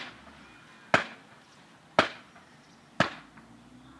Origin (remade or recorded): recorded